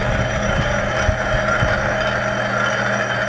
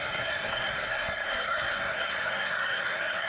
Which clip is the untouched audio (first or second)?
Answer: first